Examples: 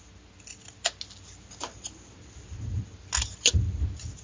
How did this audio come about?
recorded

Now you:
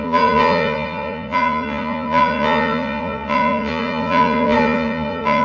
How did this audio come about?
remade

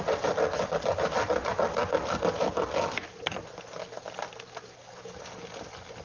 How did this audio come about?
recorded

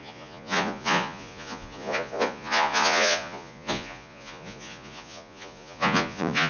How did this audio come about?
remade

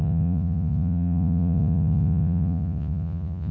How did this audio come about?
remade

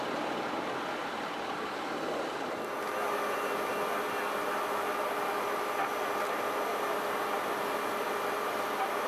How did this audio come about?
recorded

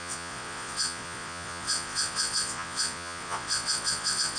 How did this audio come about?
remade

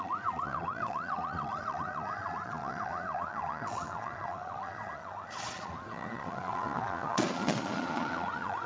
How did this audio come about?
remade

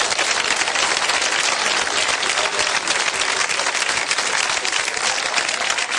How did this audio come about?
recorded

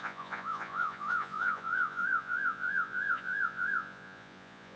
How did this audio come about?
remade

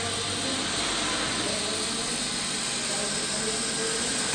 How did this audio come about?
recorded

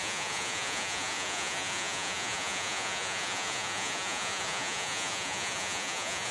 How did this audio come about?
remade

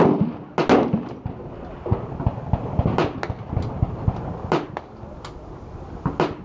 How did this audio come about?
recorded